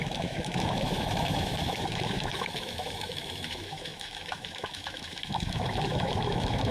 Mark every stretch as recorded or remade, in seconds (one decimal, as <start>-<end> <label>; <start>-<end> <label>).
0.0-6.7 remade